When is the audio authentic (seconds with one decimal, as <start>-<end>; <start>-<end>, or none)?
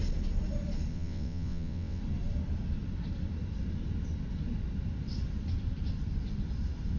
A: 0.0-0.9; 2.0-7.0